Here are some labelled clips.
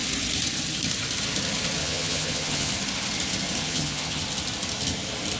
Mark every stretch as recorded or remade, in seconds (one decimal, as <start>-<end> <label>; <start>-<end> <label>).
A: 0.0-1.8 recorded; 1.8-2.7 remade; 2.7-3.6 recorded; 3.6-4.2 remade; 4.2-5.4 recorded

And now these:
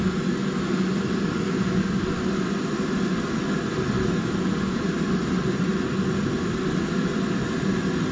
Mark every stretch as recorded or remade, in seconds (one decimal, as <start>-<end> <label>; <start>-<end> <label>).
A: 0.0-8.1 recorded

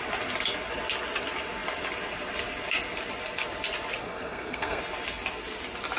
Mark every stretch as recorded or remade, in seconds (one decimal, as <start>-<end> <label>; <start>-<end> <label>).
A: 0.0-4.0 recorded; 4.0-4.8 remade; 4.8-6.0 recorded